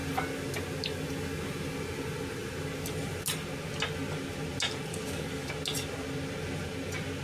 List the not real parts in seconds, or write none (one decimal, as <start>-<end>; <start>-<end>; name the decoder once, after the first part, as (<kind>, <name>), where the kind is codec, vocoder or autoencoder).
4.9-5.5 (codec, DAC)